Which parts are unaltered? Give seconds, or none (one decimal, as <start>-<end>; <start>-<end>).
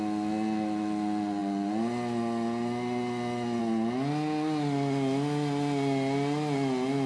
0.0-7.1